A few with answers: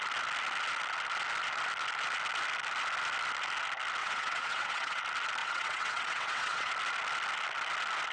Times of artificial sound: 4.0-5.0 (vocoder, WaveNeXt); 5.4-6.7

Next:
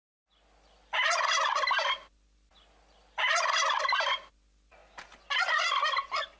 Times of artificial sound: none

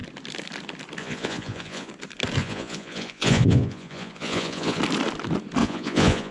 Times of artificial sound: 1.0-1.9 (vocoder, Vocos); 2.4-4.8; 5.6-6.3

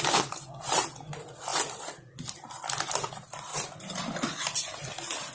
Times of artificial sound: 3.5-5.3 (vocoder, BigVGAN v2)

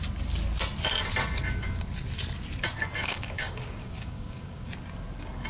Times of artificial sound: 3.0-4.7 (codec, DAC)

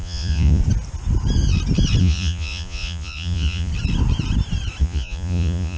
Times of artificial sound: 0.0-0.6 (vocoder, Vocos); 2.0-3.7; 4.8-5.8

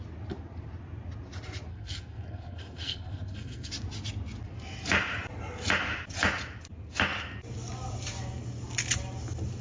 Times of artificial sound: 1.7-3.7 (codec, SNAC)

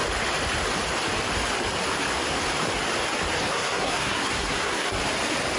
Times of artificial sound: 3.5-5.0 (codec, SNAC)